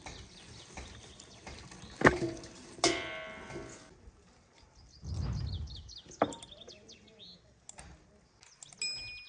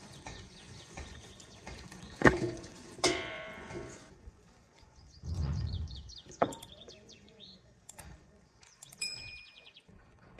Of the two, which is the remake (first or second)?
second